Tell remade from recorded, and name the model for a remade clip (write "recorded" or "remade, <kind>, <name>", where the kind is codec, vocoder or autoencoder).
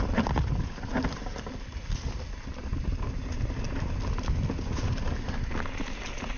recorded